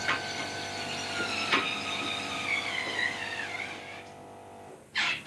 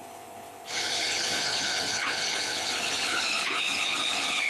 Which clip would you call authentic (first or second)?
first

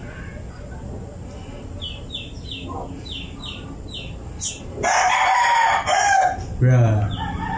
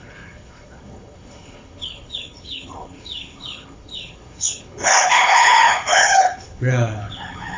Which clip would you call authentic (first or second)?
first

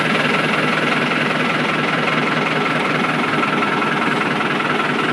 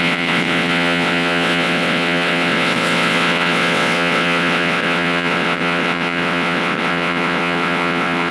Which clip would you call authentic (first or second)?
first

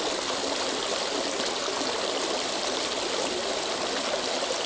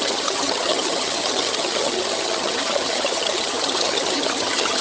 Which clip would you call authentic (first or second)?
first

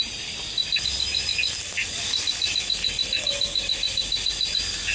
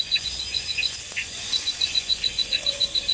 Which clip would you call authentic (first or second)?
first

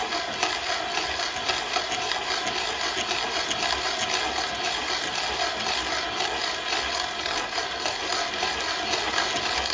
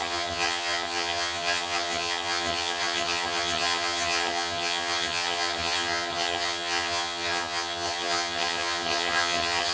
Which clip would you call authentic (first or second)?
first